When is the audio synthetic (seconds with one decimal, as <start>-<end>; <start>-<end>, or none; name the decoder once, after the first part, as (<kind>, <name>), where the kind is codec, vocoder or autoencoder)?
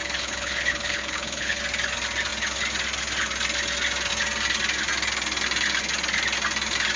0.0-1.6 (codec, HILCodec)